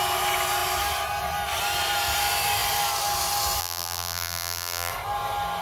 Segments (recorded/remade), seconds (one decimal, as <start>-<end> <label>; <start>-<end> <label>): 0.0-3.6 recorded; 3.6-4.9 remade; 4.9-5.6 recorded